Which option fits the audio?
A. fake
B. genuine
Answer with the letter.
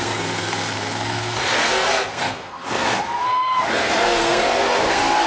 A